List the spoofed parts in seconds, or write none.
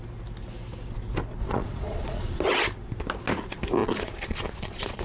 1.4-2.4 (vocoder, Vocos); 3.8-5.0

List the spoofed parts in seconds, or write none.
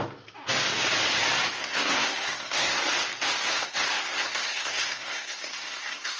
1.6-2.8 (codec, SNAC); 3.5-6.2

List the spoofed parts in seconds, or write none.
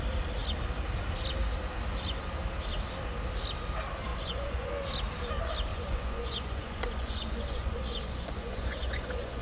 4.1-4.7 (vocoder, Vocos); 5.7-9.4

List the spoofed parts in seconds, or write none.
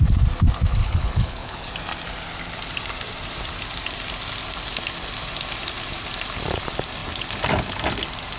0.8-1.7 (codec, HILCodec)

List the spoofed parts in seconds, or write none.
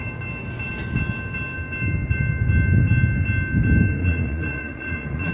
4.0-5.3 (vocoder, Vocos)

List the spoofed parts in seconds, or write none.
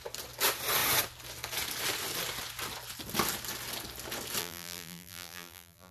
4.4-5.9 (vocoder, BigVGAN v2)